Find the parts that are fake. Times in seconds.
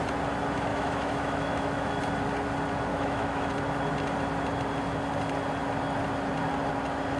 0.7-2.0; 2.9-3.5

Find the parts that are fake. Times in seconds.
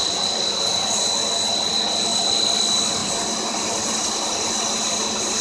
none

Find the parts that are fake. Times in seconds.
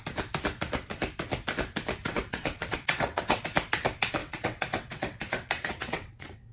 2.0-3.4; 4.2-6.5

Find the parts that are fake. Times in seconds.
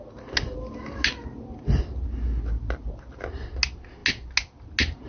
none